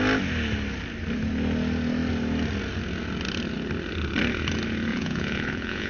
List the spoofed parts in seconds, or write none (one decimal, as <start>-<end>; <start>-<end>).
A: 4.9-5.9